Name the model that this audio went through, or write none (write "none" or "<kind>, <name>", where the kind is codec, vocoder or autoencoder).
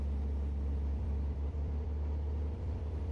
vocoder, BigVGAN v2